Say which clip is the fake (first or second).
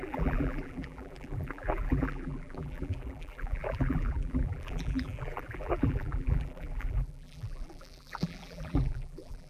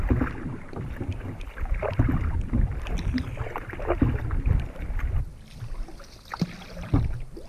first